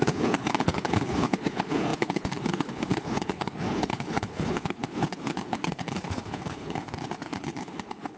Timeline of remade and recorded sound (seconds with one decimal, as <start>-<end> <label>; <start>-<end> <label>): 0.0-8.2 remade